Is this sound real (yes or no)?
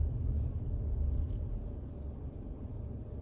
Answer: yes